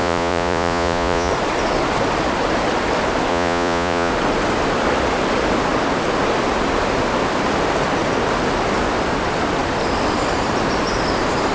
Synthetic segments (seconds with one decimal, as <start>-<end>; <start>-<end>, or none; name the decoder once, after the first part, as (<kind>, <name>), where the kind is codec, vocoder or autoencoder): 0.0-1.3 (vocoder, Vocos); 3.3-4.1